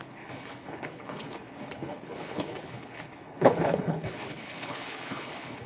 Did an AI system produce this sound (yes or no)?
yes